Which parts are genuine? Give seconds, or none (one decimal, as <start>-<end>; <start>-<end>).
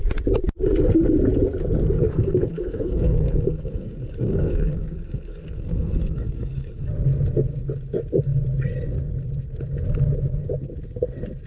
0.0-2.1; 6.9-11.5